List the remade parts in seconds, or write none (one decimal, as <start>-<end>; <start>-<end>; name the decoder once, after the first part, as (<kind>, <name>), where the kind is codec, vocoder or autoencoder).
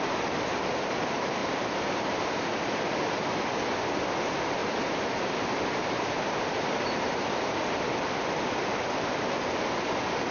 1.4-2.8 (vocoder, BigVGAN v2); 4.6-7.5